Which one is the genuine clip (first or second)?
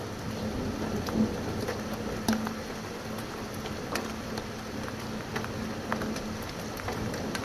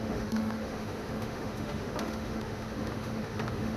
first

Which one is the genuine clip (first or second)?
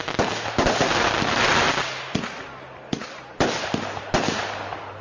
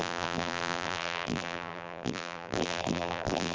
first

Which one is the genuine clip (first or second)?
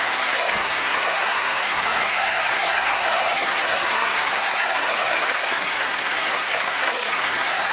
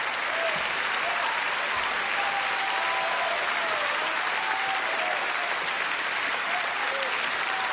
second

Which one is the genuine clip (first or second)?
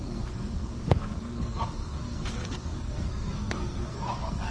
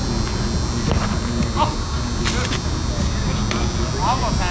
second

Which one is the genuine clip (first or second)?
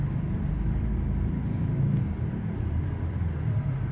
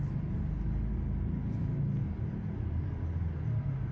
second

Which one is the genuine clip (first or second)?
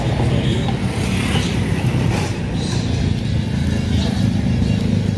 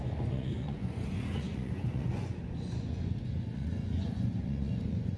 first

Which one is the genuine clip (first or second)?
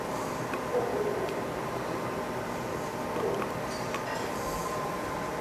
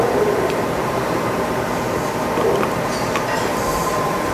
first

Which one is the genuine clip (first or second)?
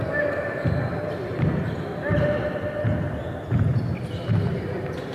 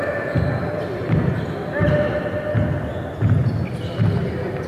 second